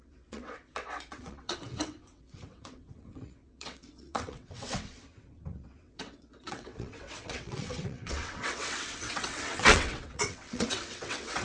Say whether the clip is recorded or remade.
remade